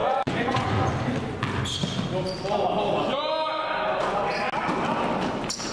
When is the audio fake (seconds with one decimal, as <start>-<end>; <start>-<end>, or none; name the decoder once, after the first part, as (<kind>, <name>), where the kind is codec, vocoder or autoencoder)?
0.0-0.9 (vocoder, Vocos)